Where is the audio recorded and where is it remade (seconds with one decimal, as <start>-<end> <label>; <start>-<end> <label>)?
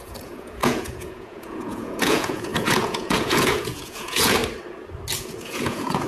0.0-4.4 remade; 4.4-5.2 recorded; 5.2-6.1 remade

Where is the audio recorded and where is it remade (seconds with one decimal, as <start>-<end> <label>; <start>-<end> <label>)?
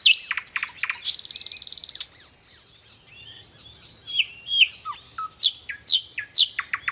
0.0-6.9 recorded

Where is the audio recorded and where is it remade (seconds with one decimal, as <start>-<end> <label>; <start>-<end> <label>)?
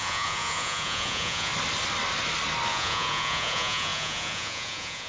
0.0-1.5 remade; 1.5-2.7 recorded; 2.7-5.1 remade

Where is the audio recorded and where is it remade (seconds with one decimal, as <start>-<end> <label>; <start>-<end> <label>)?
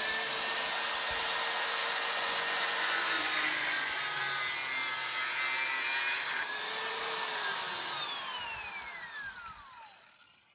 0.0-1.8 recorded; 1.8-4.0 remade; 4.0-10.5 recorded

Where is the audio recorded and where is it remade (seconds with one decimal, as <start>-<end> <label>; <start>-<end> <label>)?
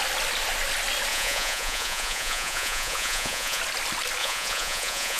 0.0-1.1 recorded; 1.1-3.6 remade; 3.6-4.2 recorded; 4.2-5.2 remade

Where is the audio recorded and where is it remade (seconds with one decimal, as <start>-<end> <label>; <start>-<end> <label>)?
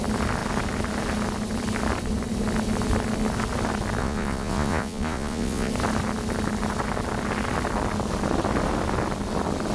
0.0-4.0 recorded; 4.0-5.7 remade; 5.7-9.7 recorded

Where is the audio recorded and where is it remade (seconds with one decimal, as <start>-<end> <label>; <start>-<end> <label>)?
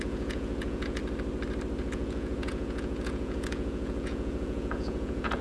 0.0-1.0 remade; 1.0-1.8 recorded; 1.8-5.4 remade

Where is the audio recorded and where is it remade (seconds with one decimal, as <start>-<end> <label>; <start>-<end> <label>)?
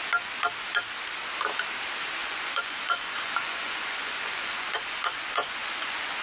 0.0-2.2 recorded; 2.2-6.2 remade